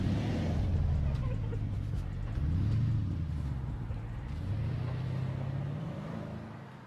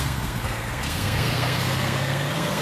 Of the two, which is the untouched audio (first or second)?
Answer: first